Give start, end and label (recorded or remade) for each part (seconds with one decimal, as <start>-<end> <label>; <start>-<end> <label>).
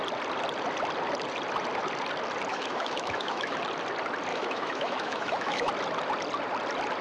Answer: 0.0-2.5 recorded; 2.5-3.6 remade; 3.6-4.3 recorded; 4.3-5.7 remade; 5.7-7.0 recorded